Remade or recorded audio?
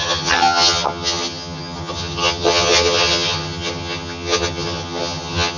remade